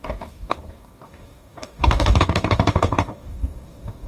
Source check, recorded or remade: remade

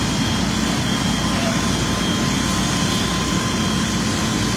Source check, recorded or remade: recorded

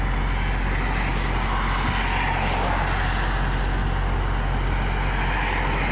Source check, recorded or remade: recorded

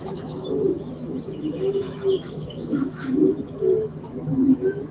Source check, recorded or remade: remade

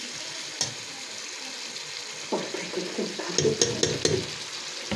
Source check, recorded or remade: recorded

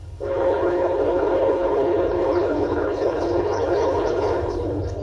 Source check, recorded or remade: remade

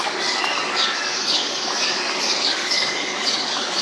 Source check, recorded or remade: remade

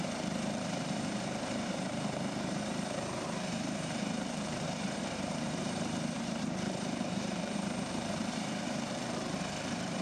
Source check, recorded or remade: remade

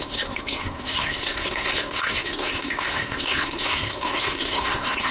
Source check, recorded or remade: remade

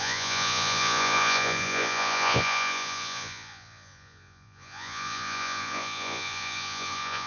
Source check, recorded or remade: remade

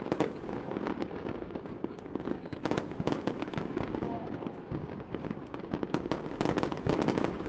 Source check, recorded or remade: remade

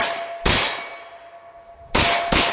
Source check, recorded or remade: recorded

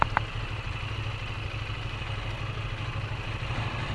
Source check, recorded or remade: recorded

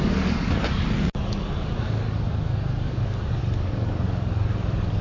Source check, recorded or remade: remade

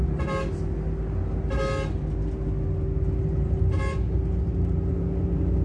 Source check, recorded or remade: recorded